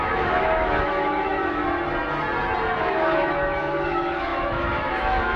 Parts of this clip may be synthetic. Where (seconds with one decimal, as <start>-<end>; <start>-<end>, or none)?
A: 0.0-1.6; 2.8-5.4